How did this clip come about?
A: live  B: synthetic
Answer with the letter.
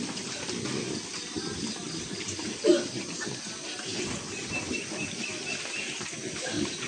A